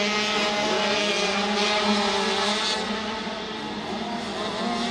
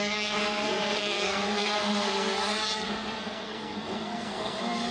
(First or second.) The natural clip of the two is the first